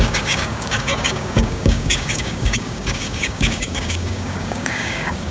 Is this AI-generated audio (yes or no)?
yes